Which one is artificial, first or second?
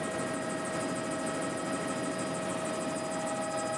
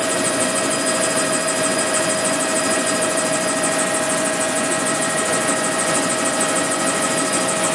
second